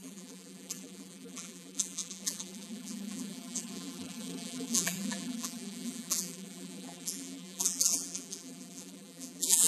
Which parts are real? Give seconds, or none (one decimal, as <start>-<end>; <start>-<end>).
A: none

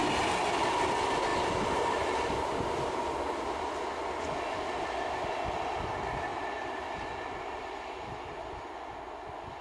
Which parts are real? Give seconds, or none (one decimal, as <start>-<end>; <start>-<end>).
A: 0.5-1.3; 3.4-6.3; 8.3-9.6

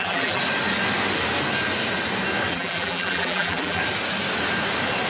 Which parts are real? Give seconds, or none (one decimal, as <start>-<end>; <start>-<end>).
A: 0.4-2.5; 3.8-5.1

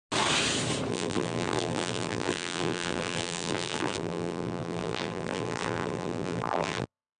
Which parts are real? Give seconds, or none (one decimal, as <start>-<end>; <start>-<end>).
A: 0.0-0.9

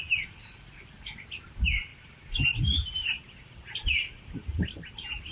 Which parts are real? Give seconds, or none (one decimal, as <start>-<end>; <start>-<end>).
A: 0.0-1.9; 4.7-5.3

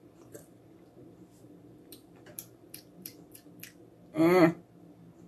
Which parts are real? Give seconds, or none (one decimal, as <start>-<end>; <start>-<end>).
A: 3.1-5.3